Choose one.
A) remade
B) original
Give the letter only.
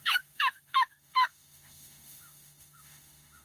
A